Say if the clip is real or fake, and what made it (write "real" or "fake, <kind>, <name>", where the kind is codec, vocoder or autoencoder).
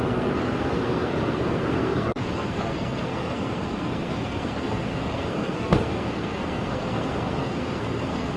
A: fake, codec, SNAC